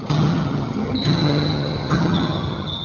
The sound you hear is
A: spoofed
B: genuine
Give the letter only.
A